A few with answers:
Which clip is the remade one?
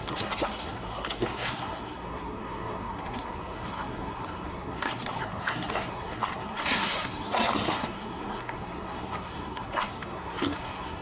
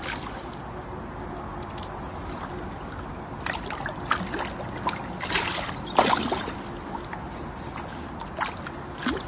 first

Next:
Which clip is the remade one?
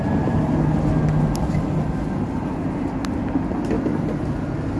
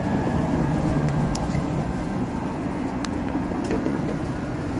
second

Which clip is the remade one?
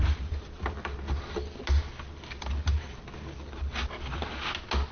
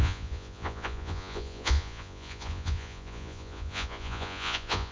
second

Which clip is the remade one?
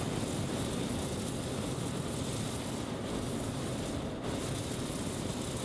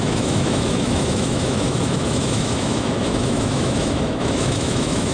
second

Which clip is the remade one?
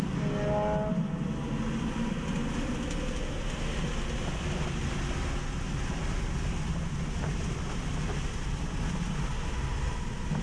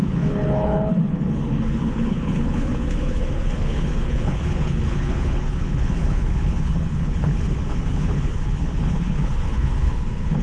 second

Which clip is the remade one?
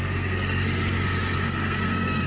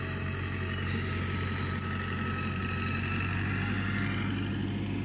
first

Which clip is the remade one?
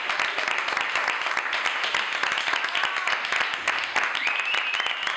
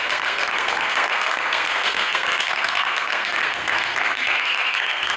second